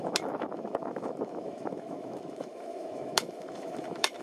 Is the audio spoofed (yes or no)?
yes